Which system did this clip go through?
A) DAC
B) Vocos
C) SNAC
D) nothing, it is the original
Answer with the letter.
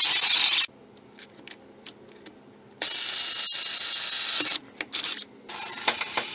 D